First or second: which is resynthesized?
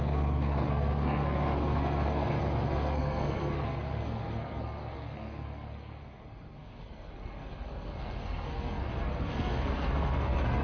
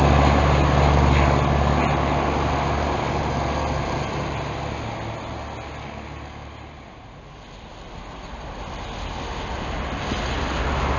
first